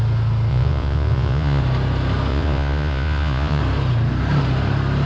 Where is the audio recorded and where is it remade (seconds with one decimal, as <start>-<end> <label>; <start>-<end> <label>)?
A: 0.0-0.5 recorded; 0.5-1.6 remade; 1.6-2.3 recorded; 2.3-3.6 remade; 3.6-5.1 recorded